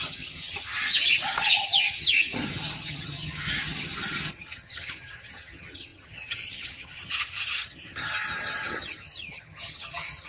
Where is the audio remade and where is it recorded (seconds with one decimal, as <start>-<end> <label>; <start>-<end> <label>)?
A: 0.0-10.3 remade